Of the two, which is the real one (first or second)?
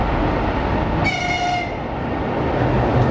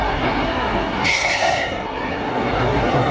first